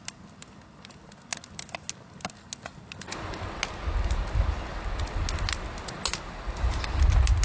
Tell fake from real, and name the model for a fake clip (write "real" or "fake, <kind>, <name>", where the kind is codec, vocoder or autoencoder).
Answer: real